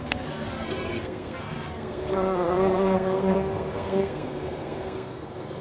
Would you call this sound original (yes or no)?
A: no